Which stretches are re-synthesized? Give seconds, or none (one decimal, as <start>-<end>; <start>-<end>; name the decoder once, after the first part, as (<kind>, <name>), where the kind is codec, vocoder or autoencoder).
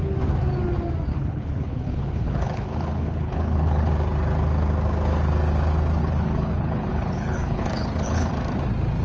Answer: 1.1-3.9 (codec, HILCodec); 6.0-8.3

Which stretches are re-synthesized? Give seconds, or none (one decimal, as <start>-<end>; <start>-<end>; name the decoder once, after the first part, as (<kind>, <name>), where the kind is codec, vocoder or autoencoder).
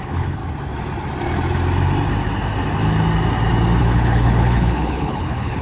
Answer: 0.0-0.4 (codec, HILCodec); 3.8-5.6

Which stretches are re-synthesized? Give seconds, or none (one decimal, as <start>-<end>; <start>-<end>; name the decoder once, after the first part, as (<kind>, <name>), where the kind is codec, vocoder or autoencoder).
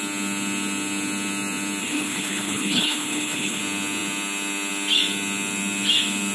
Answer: 1.8-3.6 (codec, HILCodec)